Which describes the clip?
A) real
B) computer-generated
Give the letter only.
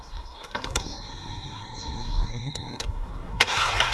B